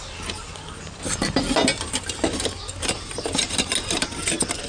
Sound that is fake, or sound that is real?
real